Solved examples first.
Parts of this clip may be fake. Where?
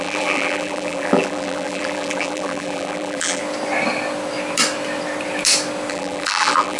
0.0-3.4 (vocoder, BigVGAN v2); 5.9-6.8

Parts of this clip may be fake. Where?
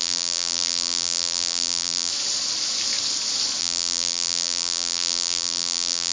0.0-2.1 (vocoder, BigVGAN v2); 3.6-6.1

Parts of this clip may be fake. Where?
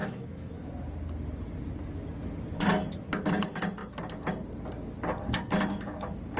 0.0-0.5 (autoencoder, DAC-VAE)